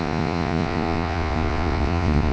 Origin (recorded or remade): remade